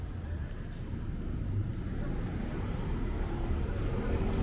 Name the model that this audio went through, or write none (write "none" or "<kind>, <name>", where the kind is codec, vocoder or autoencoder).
none